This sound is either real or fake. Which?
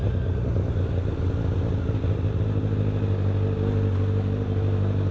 real